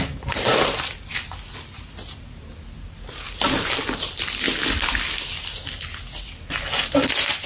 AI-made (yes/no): no